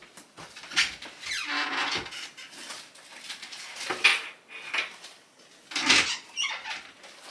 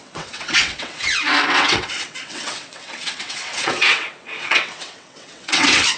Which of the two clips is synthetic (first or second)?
second